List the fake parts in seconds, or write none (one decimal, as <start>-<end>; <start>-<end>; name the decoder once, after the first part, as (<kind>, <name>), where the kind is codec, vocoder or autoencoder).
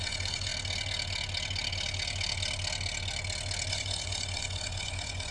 0.0-0.5 (vocoder, Vocos); 3.7-5.3